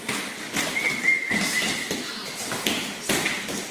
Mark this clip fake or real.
real